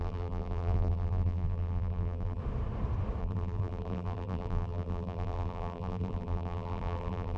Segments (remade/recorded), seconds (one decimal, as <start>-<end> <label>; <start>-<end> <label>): 0.0-2.4 remade; 2.4-3.2 recorded; 3.2-7.4 remade